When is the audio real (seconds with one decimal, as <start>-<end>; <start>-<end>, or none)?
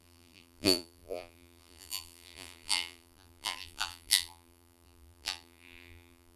none